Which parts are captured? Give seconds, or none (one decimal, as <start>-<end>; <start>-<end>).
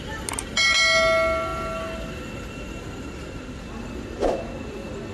0.0-5.1